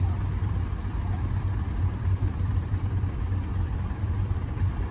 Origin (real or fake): fake